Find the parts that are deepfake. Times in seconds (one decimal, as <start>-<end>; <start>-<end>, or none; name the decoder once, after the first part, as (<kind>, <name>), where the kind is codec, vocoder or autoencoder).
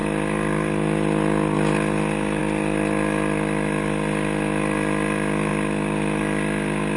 none